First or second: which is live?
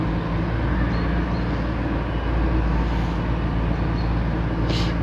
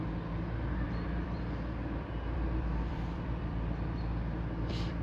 first